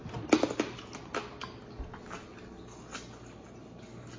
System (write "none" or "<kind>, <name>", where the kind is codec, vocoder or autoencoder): none